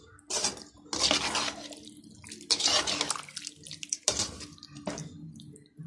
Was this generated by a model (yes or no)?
no